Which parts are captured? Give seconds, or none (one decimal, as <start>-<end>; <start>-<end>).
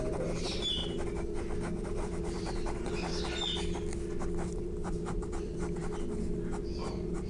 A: 0.8-1.8; 3.1-4.5; 5.8-6.6